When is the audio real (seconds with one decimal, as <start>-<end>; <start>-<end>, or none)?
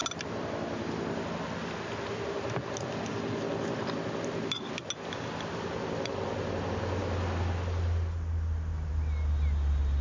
0.0-10.0